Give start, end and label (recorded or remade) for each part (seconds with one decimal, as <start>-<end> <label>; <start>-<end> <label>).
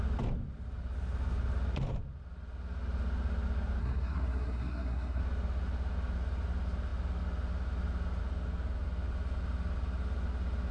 0.0-3.8 recorded; 3.8-5.2 remade; 5.2-10.7 recorded